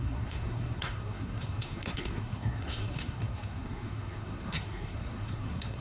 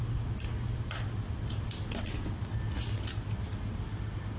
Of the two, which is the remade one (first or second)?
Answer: first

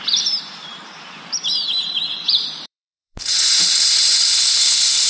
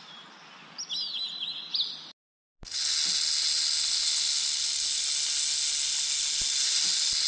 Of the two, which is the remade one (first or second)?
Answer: first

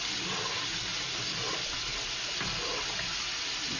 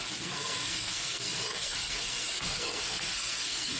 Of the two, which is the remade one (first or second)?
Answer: second